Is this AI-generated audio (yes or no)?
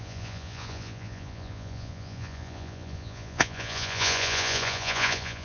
yes